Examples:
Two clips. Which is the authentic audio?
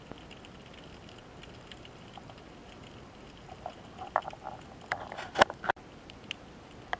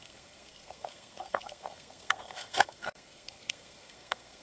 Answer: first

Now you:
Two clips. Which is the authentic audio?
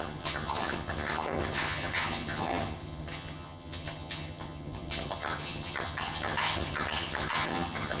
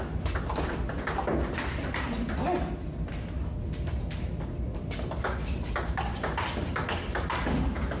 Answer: second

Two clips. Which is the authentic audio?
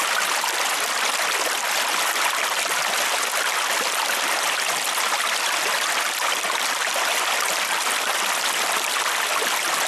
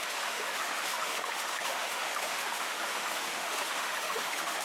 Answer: first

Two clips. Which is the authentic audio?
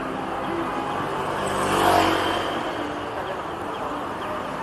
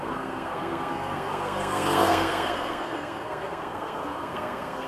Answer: first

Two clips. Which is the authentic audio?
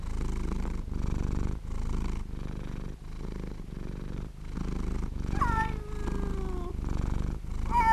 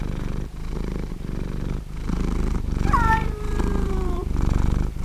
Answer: first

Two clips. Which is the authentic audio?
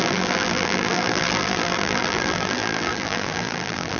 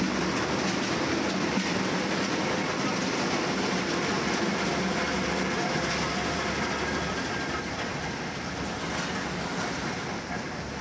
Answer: second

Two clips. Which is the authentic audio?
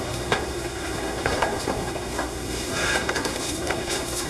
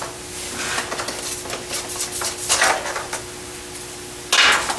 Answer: second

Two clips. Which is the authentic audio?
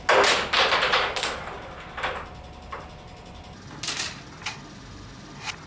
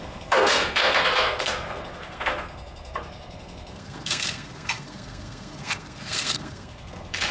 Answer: first